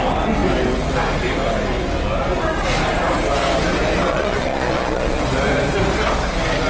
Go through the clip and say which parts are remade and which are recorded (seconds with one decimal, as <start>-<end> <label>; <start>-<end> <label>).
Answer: 0.0-4.1 recorded; 4.1-5.2 remade; 5.2-6.7 recorded